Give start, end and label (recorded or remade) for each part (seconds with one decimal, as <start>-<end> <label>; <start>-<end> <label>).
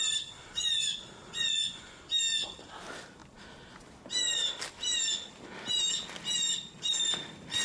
0.0-1.2 recorded; 1.2-2.0 remade; 2.0-7.6 recorded